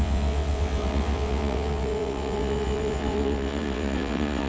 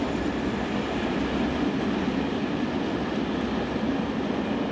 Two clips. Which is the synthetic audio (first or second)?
first